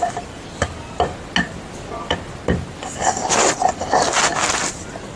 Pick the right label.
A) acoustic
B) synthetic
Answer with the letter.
A